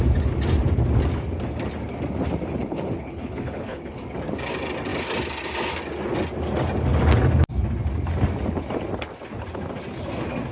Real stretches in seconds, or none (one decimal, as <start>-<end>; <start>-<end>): 0.0-2.6; 4.0-10.5